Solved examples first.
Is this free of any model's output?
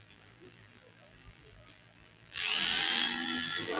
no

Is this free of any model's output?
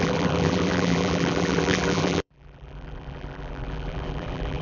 no